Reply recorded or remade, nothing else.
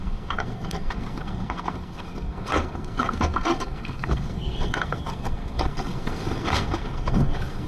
remade